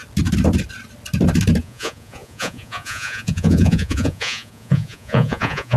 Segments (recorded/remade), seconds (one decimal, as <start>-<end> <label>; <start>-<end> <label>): 0.0-1.6 recorded; 1.6-5.8 remade